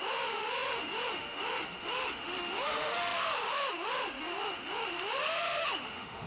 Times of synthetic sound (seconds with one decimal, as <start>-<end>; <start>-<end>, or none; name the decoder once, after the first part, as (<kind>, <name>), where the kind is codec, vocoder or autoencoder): 0.0-6.3 (autoencoder, DAC-VAE)